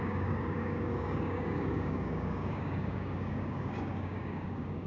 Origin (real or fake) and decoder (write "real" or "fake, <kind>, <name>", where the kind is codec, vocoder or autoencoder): fake, codec, DAC